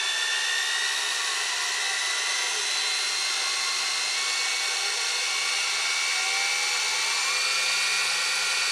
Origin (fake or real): real